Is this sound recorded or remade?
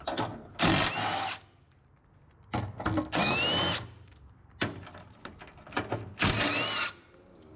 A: recorded